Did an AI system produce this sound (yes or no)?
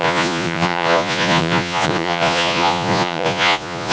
yes